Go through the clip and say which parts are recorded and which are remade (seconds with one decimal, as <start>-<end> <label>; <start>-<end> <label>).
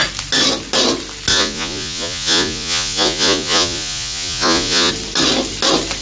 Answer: 0.0-1.3 recorded; 1.3-4.9 remade; 4.9-6.0 recorded